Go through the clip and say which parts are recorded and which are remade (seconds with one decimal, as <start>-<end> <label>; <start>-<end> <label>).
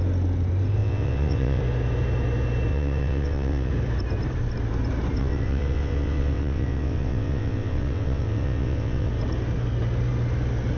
0.0-0.8 recorded; 0.8-1.6 remade; 1.6-2.7 recorded; 2.7-3.7 remade; 3.7-5.2 recorded; 5.2-9.1 remade; 9.1-10.8 recorded